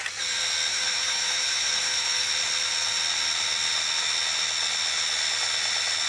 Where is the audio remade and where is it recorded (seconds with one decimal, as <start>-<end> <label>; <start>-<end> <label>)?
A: 0.0-0.7 recorded; 0.7-2.3 remade; 2.3-6.1 recorded